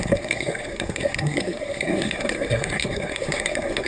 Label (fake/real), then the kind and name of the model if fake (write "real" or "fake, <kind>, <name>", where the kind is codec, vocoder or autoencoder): fake, codec, SNAC